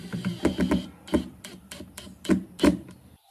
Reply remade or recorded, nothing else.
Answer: remade